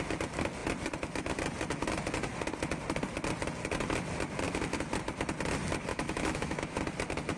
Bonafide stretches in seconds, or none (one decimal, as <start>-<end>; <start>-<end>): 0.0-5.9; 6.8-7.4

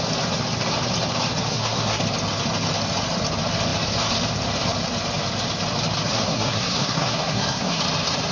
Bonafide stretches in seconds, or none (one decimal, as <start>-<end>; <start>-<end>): 0.0-1.5; 2.0-6.1; 7.8-8.3

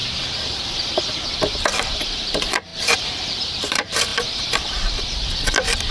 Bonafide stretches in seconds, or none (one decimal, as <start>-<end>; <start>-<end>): none

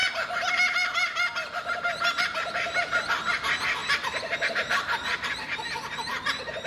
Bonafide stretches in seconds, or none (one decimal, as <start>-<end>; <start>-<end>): 0.0-3.8; 5.3-6.7

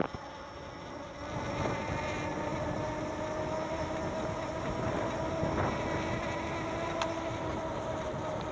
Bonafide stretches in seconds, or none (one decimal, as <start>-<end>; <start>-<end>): 0.0-8.5

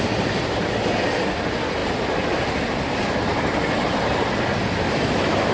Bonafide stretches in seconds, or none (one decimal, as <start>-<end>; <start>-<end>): 0.0-5.5